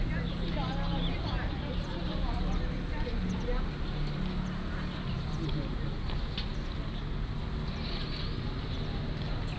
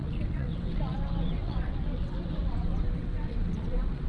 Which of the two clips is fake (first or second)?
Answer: second